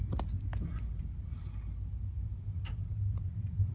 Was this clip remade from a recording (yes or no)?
no